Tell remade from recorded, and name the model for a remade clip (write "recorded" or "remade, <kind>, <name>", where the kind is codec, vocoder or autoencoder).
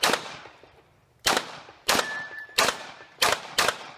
remade, vocoder, BigVGAN v2